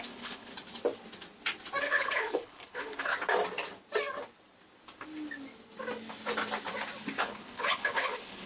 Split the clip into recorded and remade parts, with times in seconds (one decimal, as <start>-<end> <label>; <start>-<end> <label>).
0.0-0.5 remade; 0.5-1.8 recorded; 1.8-3.1 remade; 3.1-7.2 recorded; 7.2-8.5 remade